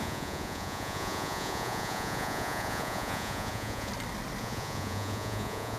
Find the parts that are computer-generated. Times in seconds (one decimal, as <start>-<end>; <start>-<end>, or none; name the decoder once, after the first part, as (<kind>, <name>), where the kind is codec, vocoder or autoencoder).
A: 0.0-3.9 (vocoder, Vocos); 4.4-5.8